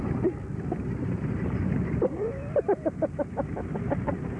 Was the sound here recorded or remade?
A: remade